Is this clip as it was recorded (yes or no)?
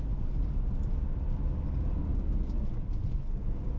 yes